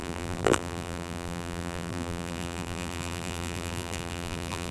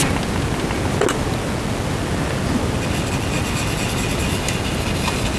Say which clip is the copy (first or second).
first